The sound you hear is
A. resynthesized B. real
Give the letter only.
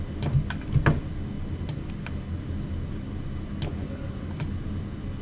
B